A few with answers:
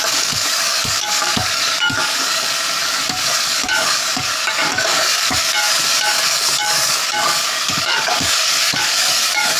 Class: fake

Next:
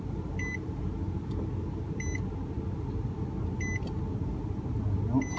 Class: real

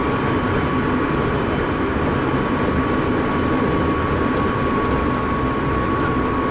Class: fake